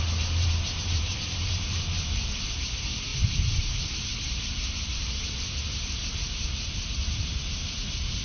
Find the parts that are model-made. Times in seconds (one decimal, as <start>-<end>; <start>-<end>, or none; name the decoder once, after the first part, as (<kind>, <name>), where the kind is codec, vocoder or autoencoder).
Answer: 0.0-8.2 (vocoder, BigVGAN v2)